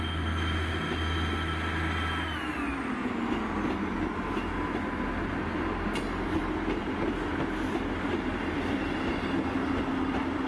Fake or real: real